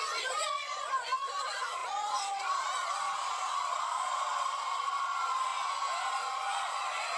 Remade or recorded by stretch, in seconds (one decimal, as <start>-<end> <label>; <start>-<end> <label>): 0.0-5.5 remade; 5.5-6.1 recorded; 6.1-7.2 remade